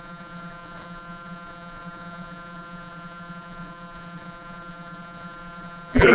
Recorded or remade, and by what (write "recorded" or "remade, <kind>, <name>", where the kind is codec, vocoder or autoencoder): remade, vocoder, BigVGAN v2